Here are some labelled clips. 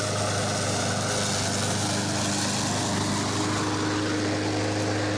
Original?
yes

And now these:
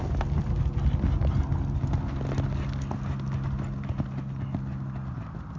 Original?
yes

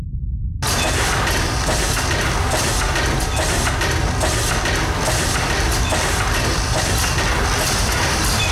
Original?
yes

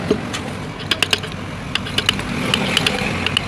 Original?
yes